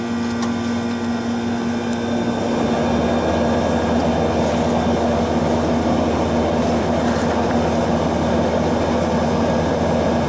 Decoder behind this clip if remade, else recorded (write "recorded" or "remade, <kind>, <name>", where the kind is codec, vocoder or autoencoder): recorded